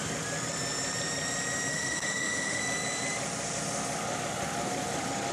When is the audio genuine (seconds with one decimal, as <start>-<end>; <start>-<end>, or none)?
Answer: 0.0-1.7; 2.6-5.3